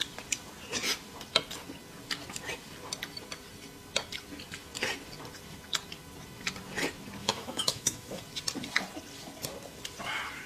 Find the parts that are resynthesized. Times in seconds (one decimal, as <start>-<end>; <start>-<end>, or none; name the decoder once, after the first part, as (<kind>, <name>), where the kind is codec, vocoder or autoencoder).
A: 7.2-8.2 (autoencoder, DAC-VAE)